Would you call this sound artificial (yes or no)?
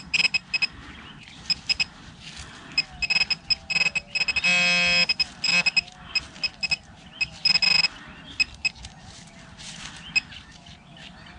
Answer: no